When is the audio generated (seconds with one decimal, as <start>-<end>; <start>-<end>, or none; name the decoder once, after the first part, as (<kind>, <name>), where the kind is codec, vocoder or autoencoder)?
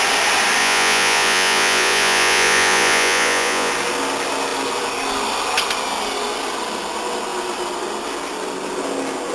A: 0.6-3.7 (vocoder, Vocos)